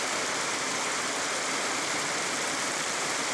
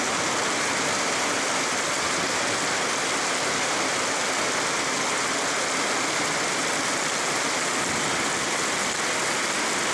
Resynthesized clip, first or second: first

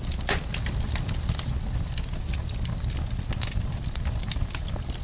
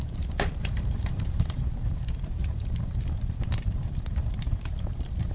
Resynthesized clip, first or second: second